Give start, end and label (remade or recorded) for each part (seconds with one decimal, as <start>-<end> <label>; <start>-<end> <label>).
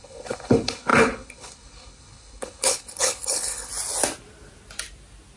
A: 0.0-3.7 remade; 3.7-5.4 recorded